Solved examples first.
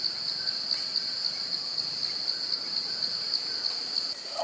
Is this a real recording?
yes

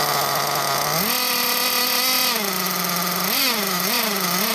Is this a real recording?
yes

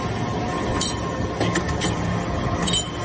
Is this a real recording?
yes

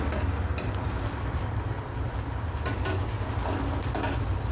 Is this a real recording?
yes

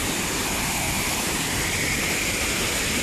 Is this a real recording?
no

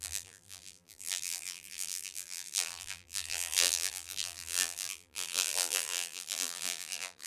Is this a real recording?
no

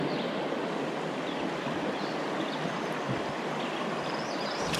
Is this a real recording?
yes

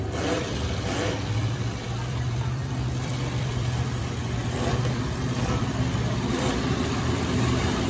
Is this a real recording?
no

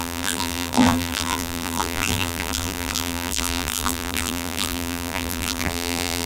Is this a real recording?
no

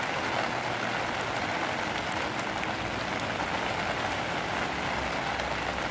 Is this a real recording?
yes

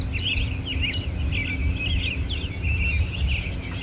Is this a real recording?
yes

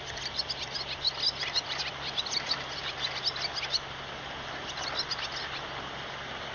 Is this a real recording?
yes